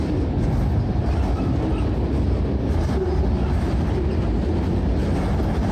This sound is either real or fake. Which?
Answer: real